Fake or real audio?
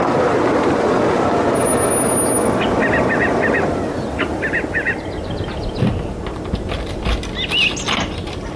real